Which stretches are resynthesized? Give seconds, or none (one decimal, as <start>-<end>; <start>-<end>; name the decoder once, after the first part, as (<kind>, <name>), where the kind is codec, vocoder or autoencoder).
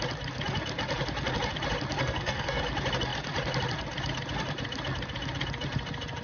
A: 2.0-2.6 (codec, SNAC)